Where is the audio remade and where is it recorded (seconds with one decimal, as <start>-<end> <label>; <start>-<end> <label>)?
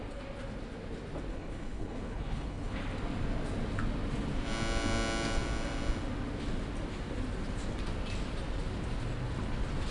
0.0-1.3 recorded; 1.3-2.8 remade; 2.8-9.9 recorded